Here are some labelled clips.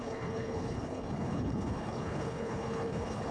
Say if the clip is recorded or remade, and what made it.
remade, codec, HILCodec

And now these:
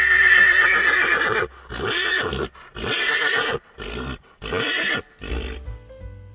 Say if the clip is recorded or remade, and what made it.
recorded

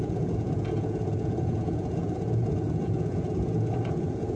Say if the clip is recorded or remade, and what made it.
remade, vocoder, Vocos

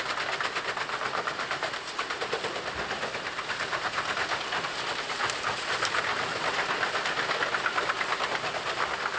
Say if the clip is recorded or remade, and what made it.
remade, vocoder, BigVGAN v2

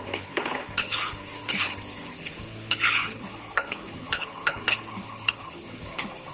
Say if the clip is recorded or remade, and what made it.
remade, codec, HILCodec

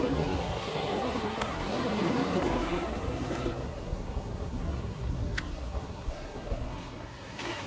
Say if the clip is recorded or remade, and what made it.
remade, codec, SNAC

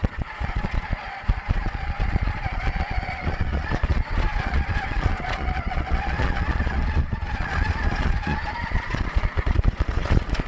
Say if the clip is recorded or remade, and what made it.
remade, vocoder, Vocos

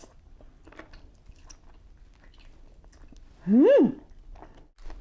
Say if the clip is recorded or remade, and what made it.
recorded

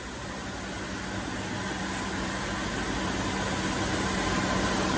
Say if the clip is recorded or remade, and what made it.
recorded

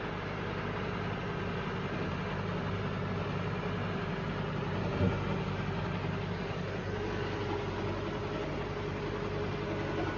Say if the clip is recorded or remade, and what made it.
recorded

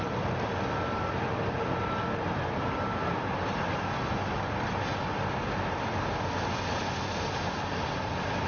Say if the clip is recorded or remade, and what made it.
recorded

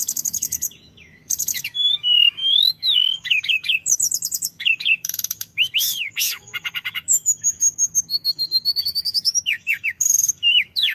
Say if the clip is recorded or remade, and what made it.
remade, codec, DAC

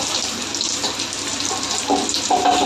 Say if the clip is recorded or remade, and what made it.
recorded